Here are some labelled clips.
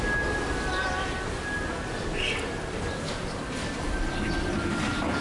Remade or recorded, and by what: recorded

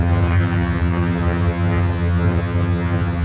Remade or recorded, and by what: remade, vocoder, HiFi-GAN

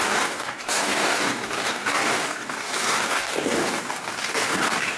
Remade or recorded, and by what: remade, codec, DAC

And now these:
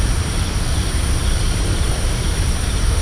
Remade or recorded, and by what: remade, vocoder, BigVGAN v2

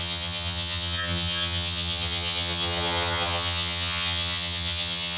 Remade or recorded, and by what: remade, vocoder, HiFi-GAN